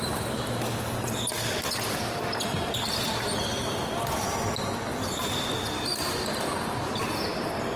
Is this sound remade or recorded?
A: recorded